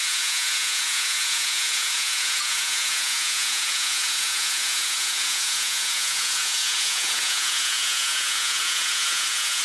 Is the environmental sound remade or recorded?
remade